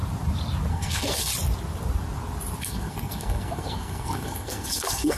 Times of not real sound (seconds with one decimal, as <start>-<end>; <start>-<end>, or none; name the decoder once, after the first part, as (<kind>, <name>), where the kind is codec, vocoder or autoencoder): 0.7-1.3 (codec, SNAC); 2.6-5.2